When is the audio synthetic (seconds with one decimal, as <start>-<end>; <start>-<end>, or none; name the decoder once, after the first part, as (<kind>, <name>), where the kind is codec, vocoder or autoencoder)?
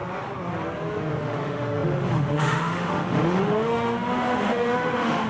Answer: 1.0-5.3 (autoencoder, DAC-VAE)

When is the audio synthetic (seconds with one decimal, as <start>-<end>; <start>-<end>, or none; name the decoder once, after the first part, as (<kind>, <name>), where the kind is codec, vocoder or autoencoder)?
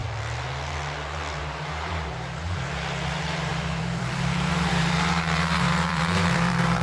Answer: 1.4-6.8 (vocoder, BigVGAN v2)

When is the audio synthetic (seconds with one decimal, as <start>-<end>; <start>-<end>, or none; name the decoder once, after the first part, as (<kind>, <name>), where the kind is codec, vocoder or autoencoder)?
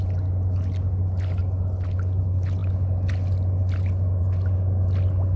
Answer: none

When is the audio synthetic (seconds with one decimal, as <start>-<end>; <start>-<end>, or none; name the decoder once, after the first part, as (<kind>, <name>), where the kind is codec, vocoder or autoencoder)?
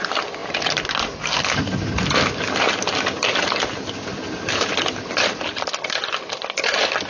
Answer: none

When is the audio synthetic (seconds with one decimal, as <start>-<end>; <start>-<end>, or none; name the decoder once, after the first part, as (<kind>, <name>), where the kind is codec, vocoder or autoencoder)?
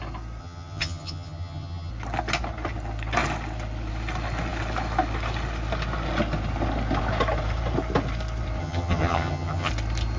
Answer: 0.4-1.9 (vocoder, HiFi-GAN); 8.6-9.7